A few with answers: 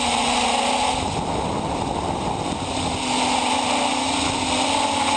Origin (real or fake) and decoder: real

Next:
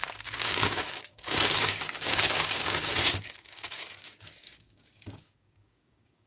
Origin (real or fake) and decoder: fake, codec, DAC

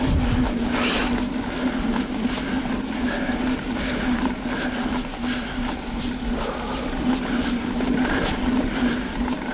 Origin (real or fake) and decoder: real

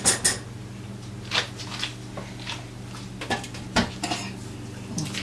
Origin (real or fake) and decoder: real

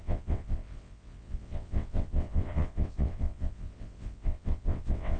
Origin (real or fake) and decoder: fake, vocoder, WaveNeXt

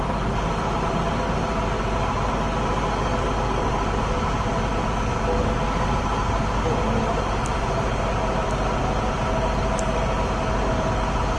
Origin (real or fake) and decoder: real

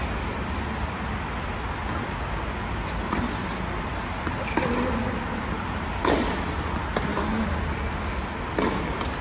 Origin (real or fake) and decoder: real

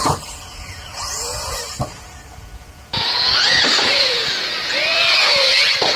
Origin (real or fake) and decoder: fake, vocoder, Vocos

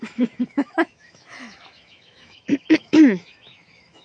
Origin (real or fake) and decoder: fake, autoencoder, DAC-VAE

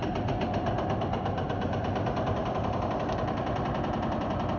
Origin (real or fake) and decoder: real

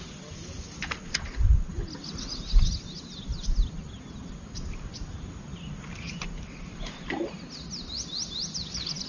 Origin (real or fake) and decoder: real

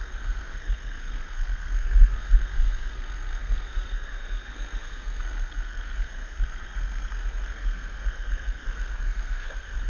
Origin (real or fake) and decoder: fake, codec, SNAC